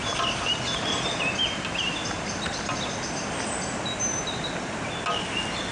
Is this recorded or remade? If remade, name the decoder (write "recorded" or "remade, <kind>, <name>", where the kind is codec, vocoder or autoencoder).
recorded